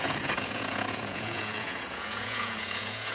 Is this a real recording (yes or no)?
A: no